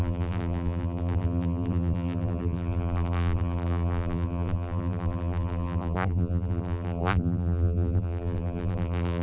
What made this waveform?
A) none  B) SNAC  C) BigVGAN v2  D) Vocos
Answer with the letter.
C